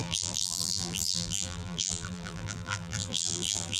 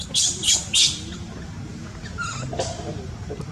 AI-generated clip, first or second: first